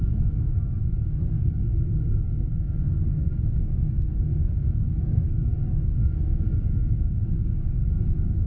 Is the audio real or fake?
fake